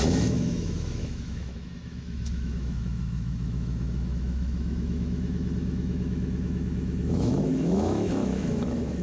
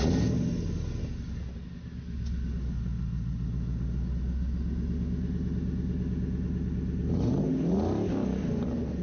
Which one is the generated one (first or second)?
first